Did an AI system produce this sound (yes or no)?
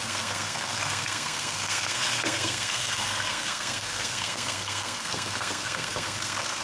yes